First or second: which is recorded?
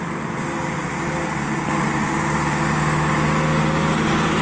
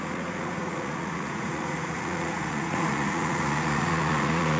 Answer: first